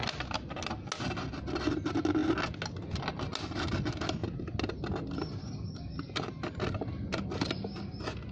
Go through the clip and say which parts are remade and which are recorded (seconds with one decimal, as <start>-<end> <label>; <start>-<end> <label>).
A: 0.0-8.3 recorded